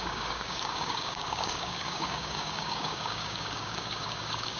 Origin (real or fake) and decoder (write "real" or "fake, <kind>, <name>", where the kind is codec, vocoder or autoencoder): fake, codec, DAC